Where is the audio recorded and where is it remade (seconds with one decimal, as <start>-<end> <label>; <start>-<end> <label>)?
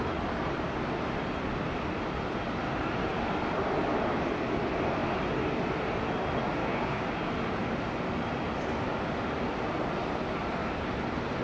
0.0-6.6 recorded; 6.6-7.3 remade; 7.3-11.4 recorded